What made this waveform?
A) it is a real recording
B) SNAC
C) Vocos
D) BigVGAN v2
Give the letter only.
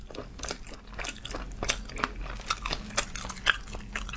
A